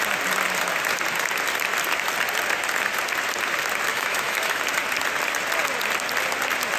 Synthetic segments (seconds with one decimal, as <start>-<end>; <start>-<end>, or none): 3.9-4.6